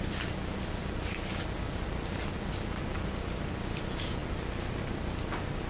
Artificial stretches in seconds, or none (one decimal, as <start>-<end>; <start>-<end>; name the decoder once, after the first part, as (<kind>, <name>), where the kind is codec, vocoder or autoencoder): none